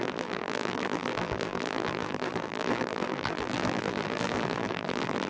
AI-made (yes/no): yes